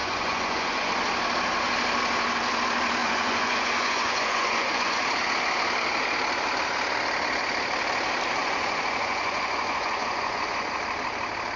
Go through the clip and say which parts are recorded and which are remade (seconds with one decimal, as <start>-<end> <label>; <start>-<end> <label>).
0.0-0.9 remade; 0.9-3.0 recorded; 3.0-5.0 remade; 5.0-8.4 recorded; 8.4-10.8 remade; 10.8-11.6 recorded